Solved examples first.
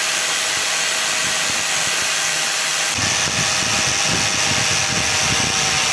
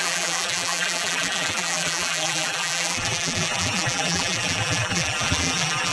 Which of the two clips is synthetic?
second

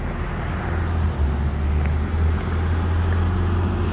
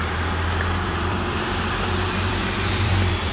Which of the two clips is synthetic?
second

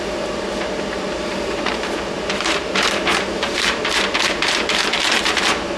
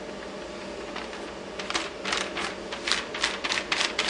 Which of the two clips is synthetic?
first